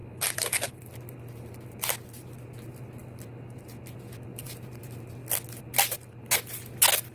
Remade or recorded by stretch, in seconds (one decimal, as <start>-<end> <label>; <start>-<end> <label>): 0.0-4.3 recorded; 4.3-4.8 remade; 4.8-7.1 recorded